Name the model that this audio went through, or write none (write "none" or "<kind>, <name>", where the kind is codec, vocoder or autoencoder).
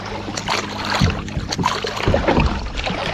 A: none